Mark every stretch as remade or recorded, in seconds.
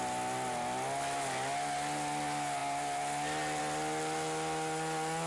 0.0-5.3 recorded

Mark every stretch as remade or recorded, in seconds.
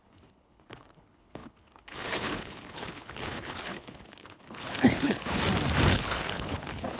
0.0-5.4 remade; 5.4-5.9 recorded; 5.9-7.0 remade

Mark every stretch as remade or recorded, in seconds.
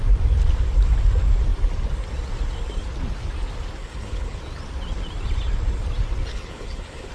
0.0-3.8 recorded; 3.8-4.4 remade; 4.4-6.3 recorded; 6.3-7.1 remade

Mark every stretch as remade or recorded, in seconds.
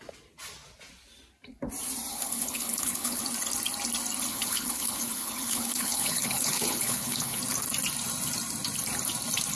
0.0-2.1 recorded; 2.1-3.2 remade; 3.2-4.3 recorded; 4.3-7.4 remade; 7.4-9.6 recorded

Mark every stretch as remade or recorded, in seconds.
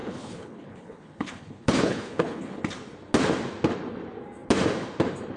0.0-2.6 remade; 2.6-5.4 recorded